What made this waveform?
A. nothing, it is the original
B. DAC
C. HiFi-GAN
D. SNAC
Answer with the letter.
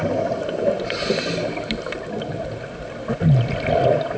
A